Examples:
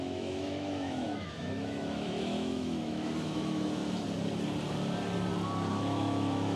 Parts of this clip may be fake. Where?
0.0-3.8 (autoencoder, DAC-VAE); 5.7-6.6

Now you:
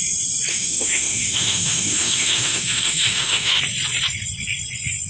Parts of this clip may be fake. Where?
0.5-3.6 (autoencoder, DAC-VAE)